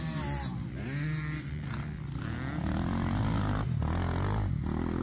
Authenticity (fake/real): real